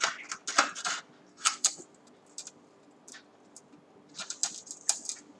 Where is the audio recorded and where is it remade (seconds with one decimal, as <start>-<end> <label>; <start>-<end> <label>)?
0.0-1.3 recorded; 1.3-1.8 remade; 1.8-5.4 recorded